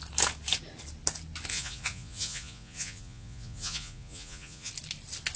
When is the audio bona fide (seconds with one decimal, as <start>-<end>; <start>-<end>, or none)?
0.0-1.5; 4.7-5.4